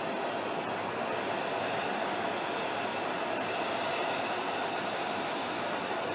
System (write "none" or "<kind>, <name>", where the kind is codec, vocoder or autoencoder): none